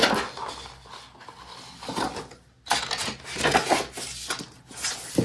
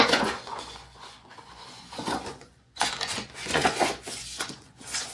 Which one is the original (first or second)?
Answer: first